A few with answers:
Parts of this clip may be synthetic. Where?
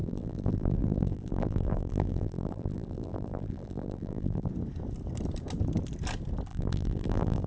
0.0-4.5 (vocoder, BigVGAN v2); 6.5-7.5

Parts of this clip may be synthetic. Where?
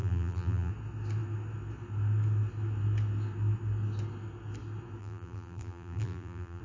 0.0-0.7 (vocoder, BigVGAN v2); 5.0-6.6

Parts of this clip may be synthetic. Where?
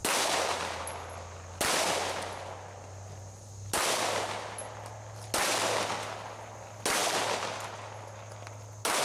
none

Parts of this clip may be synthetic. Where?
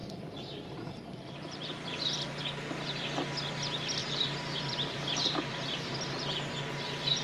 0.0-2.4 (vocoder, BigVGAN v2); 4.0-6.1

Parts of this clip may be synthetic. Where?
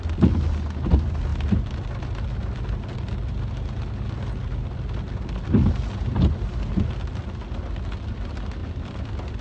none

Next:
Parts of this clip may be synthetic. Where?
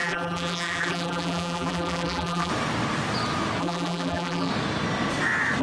0.0-2.5 (vocoder, BigVGAN v2); 3.6-4.5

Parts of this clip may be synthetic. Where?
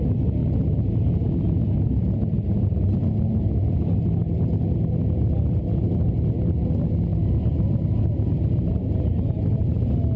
none